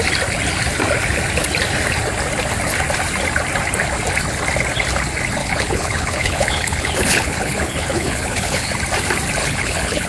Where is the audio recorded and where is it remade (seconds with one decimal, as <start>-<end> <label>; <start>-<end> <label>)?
0.0-5.4 recorded; 5.4-8.7 remade; 8.7-9.4 recorded; 9.4-10.1 remade